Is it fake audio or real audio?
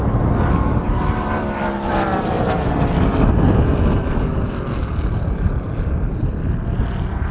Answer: fake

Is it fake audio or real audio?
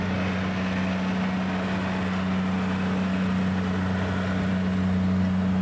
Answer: real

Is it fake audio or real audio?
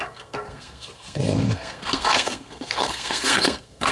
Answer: fake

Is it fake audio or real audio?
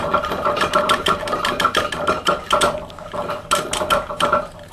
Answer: real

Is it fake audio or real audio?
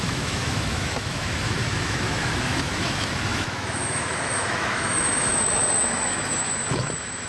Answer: fake